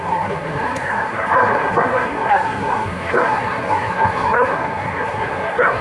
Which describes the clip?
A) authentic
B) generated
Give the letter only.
B